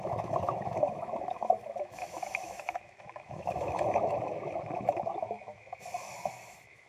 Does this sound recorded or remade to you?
remade